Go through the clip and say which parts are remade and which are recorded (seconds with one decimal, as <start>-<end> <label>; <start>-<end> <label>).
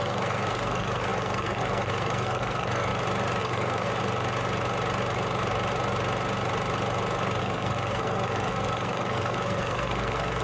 0.0-2.9 remade; 2.9-3.4 recorded; 3.4-3.9 remade; 3.9-7.4 recorded; 7.4-10.4 remade